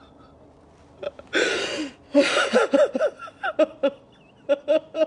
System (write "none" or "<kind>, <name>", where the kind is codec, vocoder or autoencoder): none